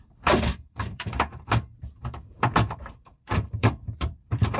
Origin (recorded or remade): remade